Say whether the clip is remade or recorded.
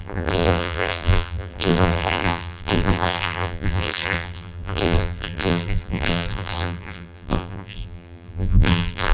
remade